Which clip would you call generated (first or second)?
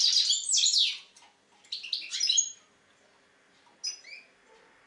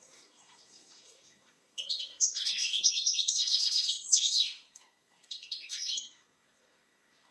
second